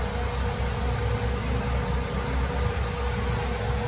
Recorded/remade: recorded